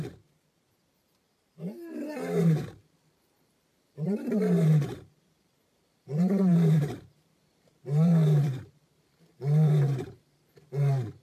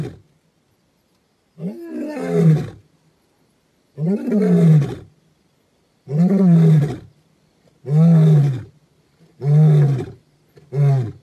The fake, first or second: first